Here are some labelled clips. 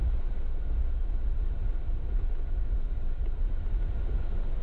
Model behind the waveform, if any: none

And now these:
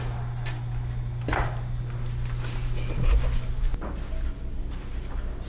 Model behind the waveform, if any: none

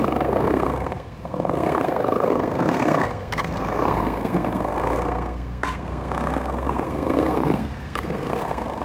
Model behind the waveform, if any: codec, SNAC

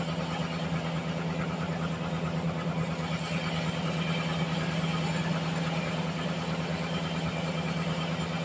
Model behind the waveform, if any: none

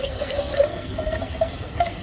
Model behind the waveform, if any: codec, SNAC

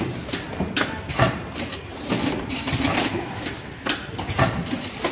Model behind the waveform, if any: vocoder, BigVGAN v2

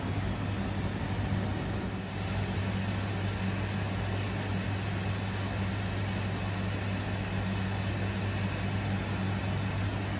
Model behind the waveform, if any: none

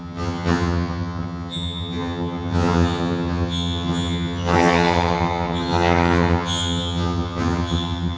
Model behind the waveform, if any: vocoder, HiFi-GAN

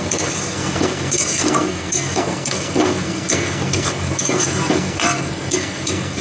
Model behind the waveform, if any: codec, SNAC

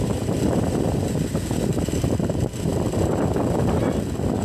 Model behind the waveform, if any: vocoder, BigVGAN v2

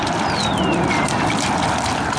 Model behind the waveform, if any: none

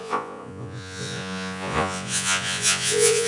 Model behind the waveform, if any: vocoder, Vocos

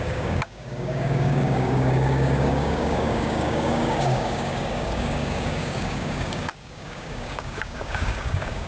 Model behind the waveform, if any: codec, DAC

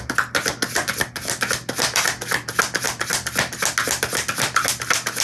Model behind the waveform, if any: none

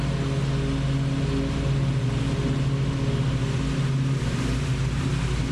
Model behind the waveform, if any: none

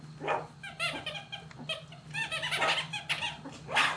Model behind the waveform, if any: none